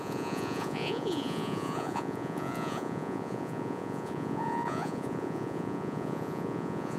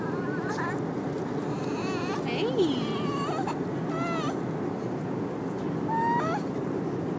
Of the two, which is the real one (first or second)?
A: second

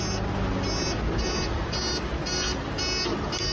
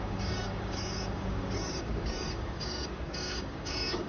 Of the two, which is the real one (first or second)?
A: first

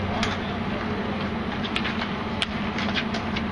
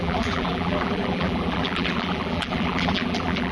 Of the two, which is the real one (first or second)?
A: first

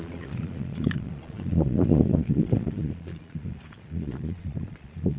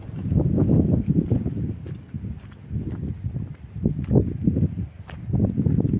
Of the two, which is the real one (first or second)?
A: second